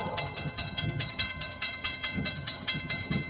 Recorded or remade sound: remade